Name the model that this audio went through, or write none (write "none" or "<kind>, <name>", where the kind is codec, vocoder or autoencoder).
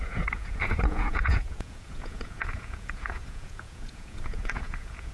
vocoder, Vocos